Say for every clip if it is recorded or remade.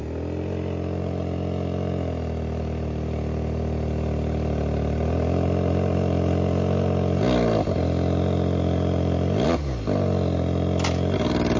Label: recorded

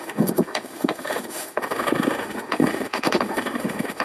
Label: remade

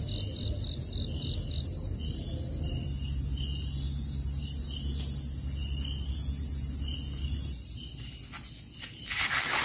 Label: recorded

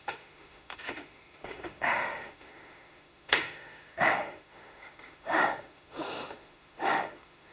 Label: remade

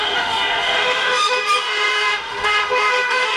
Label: remade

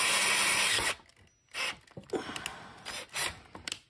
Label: recorded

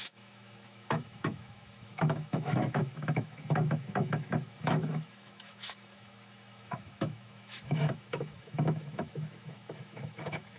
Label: remade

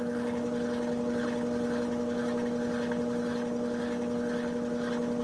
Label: recorded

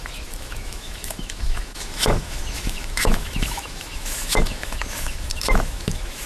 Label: remade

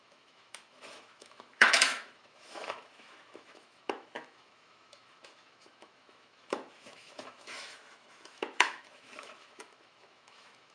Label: remade